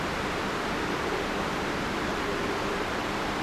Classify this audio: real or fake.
real